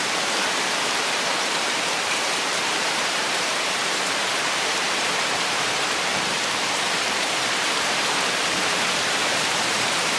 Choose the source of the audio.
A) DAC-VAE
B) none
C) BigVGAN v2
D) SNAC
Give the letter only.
C